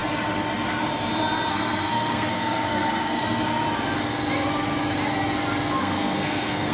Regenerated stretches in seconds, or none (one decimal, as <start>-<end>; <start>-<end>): 1.5-3.2; 5.8-6.7